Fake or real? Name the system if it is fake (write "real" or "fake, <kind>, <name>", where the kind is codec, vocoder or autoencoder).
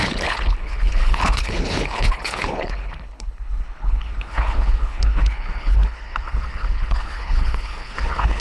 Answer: fake, codec, HILCodec